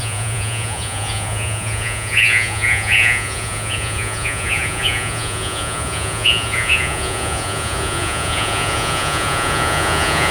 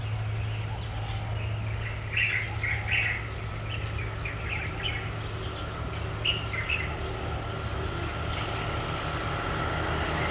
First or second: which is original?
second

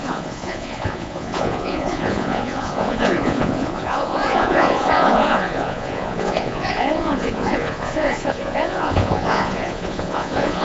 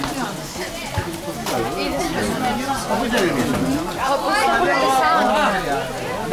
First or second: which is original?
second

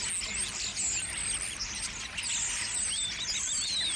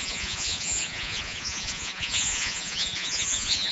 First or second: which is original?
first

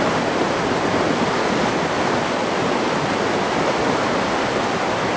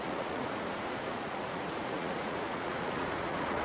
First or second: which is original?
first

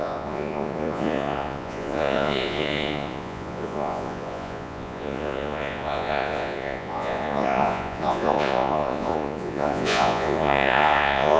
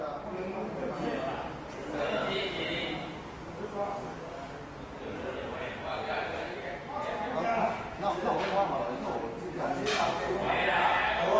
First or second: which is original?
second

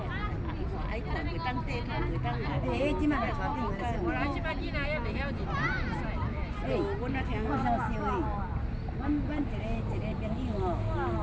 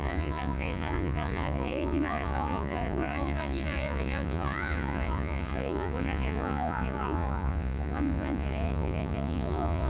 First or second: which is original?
first